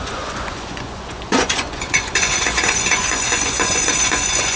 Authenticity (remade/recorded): remade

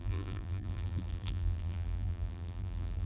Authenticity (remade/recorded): remade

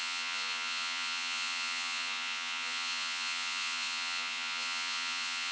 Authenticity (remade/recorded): remade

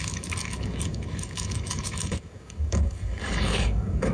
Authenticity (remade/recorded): remade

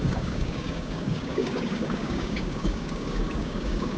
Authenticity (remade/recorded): remade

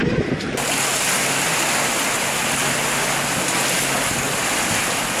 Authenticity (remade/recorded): recorded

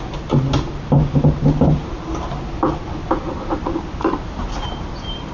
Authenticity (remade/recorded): recorded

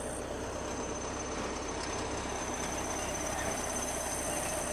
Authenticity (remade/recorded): recorded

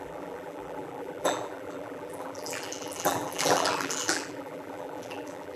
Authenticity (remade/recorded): remade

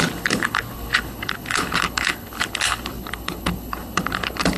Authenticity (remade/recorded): remade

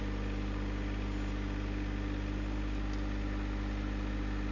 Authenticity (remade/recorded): recorded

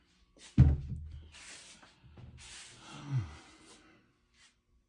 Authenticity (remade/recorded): recorded